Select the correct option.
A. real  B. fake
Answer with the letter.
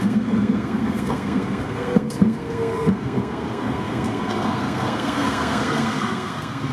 B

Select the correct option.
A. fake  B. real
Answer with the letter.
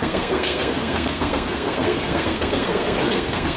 A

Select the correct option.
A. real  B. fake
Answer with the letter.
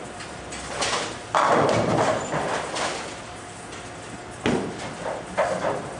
A